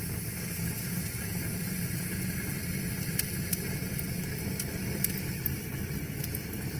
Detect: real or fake real